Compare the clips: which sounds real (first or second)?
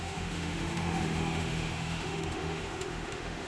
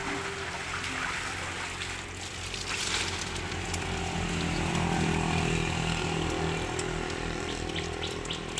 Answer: second